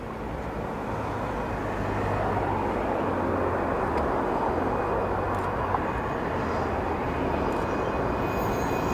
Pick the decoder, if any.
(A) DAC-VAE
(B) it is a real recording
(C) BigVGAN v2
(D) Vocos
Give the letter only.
B